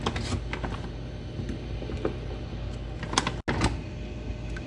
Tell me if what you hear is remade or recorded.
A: recorded